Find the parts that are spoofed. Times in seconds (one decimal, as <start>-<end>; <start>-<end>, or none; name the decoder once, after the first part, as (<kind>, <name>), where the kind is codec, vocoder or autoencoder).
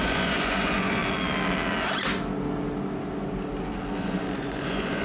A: 0.0-1.0 (vocoder, Vocos); 4.0-5.0